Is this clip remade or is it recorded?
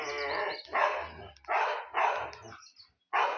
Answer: recorded